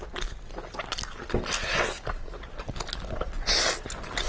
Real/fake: real